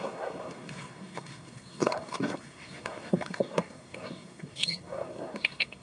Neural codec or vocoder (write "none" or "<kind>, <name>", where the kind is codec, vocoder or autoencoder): codec, SNAC